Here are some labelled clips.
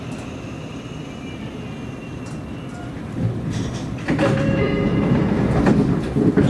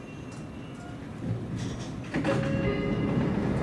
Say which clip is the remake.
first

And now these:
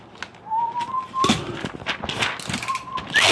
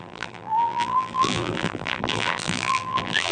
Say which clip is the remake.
second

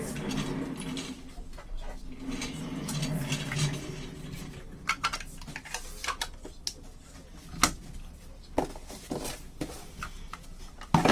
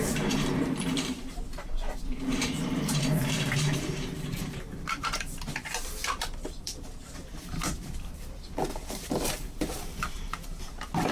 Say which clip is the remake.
second